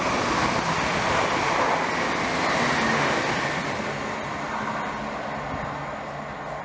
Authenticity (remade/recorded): recorded